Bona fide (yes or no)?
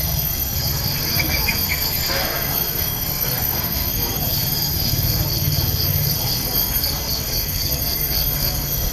no